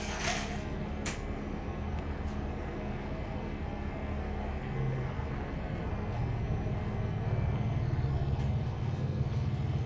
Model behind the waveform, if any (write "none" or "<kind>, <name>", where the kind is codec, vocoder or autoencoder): codec, SNAC